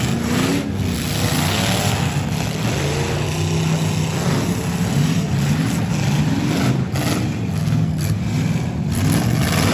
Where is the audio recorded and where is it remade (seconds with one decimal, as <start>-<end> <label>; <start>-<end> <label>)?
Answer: 0.0-7.6 recorded; 7.6-8.2 remade; 8.2-9.7 recorded